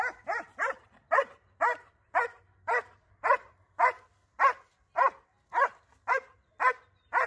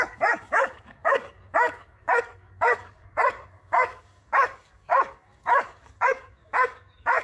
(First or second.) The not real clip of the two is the second